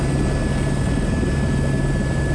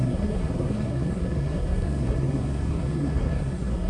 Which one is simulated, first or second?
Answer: second